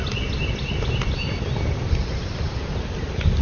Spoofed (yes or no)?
no